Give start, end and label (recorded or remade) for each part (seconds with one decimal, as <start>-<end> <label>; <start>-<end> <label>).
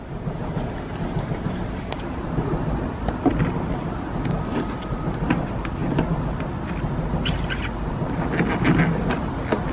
0.0-9.7 recorded